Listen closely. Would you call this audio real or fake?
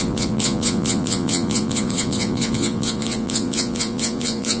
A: fake